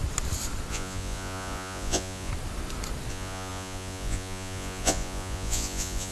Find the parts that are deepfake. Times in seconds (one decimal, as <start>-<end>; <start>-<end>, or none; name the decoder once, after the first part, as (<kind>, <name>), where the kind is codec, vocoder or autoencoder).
0.7-2.3 (vocoder, Vocos); 3.1-6.1